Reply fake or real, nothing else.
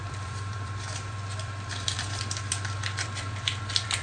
fake